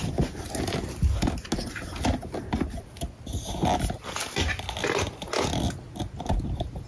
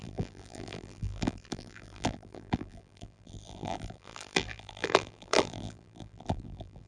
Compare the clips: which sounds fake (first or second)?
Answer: second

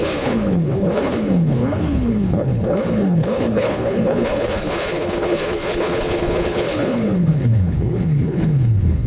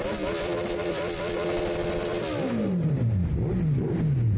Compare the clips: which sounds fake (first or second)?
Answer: first